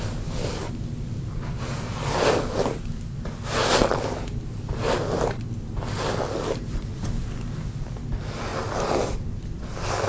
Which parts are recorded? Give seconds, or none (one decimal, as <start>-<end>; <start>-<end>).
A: 0.0-10.1